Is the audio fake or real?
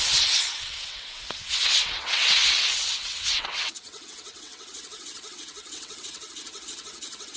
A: fake